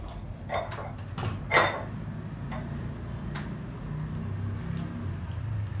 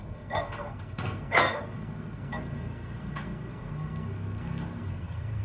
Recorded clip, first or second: first